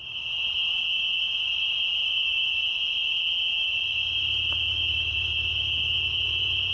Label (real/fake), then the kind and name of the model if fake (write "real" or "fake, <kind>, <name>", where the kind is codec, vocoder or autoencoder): real